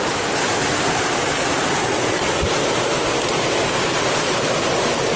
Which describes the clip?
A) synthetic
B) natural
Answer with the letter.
B